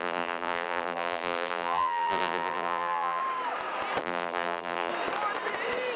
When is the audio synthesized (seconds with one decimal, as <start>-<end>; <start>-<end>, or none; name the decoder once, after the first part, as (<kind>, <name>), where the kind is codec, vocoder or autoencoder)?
0.0-3.2 (vocoder, BigVGAN v2); 4.0-4.9